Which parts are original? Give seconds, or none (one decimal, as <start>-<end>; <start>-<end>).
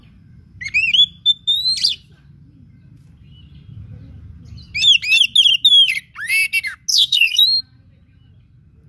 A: 0.0-6.9; 7.4-8.9